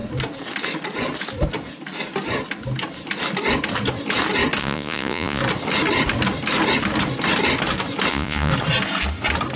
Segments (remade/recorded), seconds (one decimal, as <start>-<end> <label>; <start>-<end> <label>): 0.0-4.6 recorded; 4.6-5.4 remade; 5.4-8.1 recorded; 8.1-8.5 remade; 8.5-9.6 recorded